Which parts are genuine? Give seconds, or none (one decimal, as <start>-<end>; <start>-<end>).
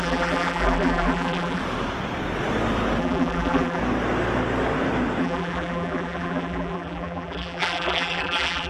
1.6-3.0; 3.8-5.2